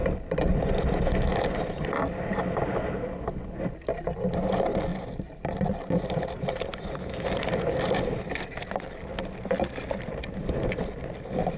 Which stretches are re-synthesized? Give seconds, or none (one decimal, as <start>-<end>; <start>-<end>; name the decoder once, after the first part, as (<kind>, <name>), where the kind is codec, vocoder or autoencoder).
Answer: 4.9-7.4 (vocoder, BigVGAN v2)